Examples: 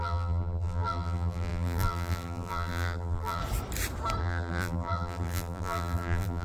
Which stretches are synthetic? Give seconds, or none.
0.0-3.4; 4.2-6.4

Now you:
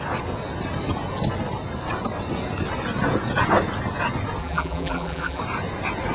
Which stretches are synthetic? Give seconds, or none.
4.4-5.4

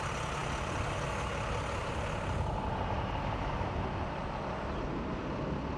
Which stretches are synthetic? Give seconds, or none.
1.8-3.9

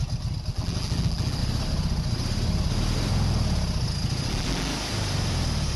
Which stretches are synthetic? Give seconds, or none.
0.5-1.4; 4.3-4.7